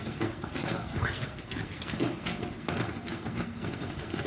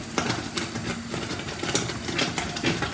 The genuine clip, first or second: second